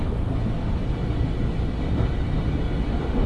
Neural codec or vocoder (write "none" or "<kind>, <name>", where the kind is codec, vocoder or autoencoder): none